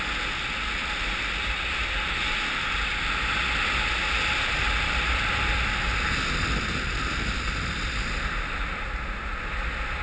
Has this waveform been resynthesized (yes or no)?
no